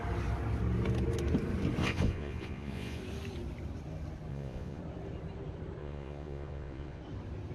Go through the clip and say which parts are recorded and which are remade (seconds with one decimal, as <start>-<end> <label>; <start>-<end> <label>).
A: 0.0-1.8 recorded; 1.8-3.0 remade; 3.0-4.3 recorded; 4.3-4.8 remade; 4.8-5.8 recorded; 5.8-7.0 remade; 7.0-7.5 recorded